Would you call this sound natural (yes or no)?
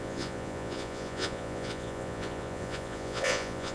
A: no